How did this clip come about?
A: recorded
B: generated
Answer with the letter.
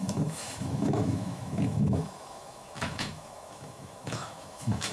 B